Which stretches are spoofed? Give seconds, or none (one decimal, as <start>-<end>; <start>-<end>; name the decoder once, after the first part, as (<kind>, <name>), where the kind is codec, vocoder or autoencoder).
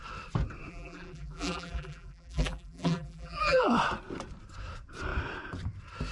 0.7-3.7 (vocoder, BigVGAN v2)